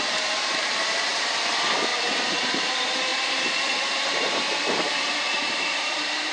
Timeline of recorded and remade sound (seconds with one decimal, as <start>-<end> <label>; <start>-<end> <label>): 0.0-1.1 remade; 1.1-2.4 recorded; 2.4-6.3 remade